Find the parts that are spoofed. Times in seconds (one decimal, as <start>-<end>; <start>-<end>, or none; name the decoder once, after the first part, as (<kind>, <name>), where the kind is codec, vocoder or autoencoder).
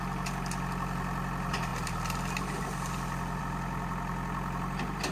none